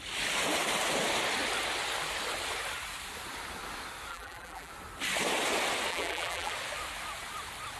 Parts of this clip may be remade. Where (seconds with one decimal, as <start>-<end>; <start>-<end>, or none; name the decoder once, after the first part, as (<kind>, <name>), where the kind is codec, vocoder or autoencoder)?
4.1-4.7 (vocoder, BigVGAN v2); 5.9-6.5